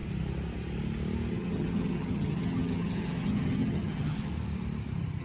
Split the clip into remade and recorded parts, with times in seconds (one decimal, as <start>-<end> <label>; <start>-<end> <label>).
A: 0.0-1.3 recorded; 1.3-4.3 remade; 4.3-5.2 recorded